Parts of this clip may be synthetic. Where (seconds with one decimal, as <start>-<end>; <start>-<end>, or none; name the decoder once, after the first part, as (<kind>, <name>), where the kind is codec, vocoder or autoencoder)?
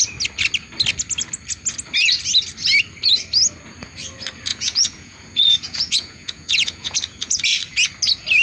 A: 4.5-7.4 (vocoder, Vocos)